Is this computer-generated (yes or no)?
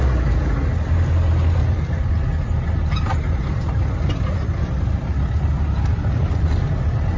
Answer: no